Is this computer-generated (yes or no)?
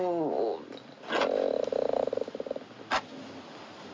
no